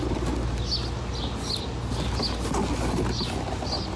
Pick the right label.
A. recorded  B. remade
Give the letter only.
A